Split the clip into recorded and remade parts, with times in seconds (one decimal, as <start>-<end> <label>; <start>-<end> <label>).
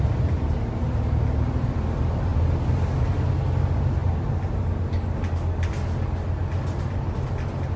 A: 0.0-7.8 recorded